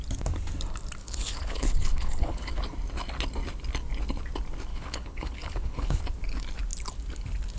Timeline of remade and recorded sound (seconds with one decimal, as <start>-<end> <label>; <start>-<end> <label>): 0.0-1.0 recorded; 1.0-2.5 remade; 2.5-4.7 recorded; 4.7-6.0 remade; 6.0-7.6 recorded